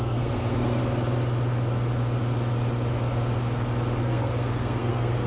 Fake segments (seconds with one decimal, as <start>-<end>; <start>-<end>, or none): 0.0-0.8; 4.0-5.3

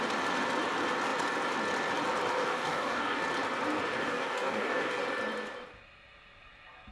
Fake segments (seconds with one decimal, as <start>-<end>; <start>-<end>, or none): 2.3-3.2; 3.9-5.0